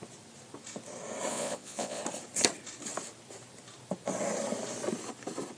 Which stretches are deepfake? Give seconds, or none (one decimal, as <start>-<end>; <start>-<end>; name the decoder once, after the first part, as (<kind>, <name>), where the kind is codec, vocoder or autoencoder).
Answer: 1.3-2.0 (vocoder, Vocos)